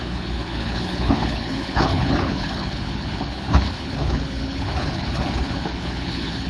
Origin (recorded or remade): remade